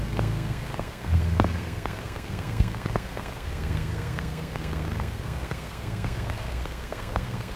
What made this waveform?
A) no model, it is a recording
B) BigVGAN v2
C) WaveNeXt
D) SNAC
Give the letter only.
D